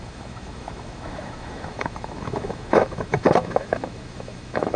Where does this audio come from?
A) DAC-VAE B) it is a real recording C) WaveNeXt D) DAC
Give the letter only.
A